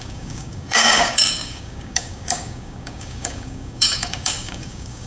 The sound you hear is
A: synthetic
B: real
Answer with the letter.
A